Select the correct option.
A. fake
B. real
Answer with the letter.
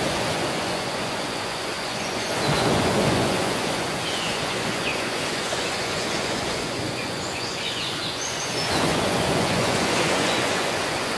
A